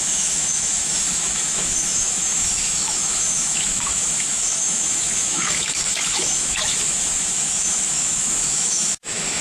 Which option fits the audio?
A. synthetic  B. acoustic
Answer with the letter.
A